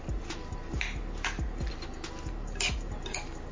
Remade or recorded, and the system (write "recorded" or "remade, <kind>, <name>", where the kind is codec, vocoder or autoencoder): recorded